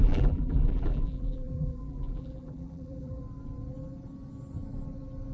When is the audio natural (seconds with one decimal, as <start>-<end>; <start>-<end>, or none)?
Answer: 3.2-5.3